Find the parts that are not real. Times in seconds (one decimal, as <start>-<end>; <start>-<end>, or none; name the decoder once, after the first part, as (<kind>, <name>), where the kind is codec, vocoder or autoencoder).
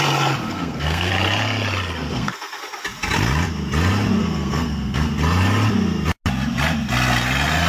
0.4-1.1 (codec, SNAC); 2.1-2.6; 4.2-5.1